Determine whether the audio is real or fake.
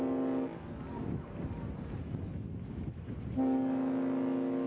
real